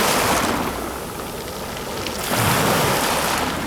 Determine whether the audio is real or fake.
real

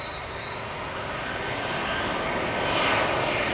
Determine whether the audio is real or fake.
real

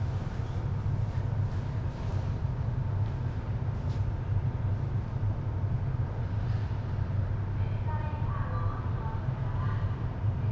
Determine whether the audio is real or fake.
real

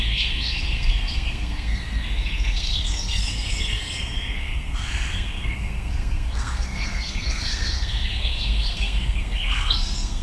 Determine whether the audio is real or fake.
fake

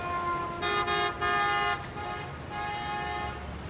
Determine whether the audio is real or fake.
real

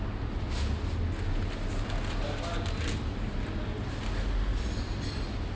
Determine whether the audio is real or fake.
real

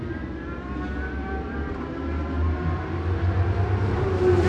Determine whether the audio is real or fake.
real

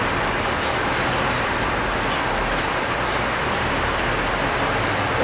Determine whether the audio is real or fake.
real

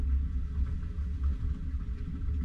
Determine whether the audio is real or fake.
real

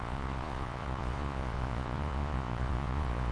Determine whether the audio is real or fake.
fake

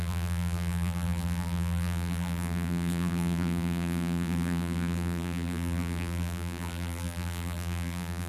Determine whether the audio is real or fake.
fake